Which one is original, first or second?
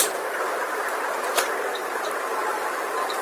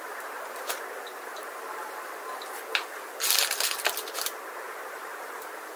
second